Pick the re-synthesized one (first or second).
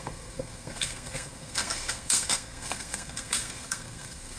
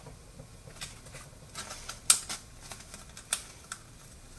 first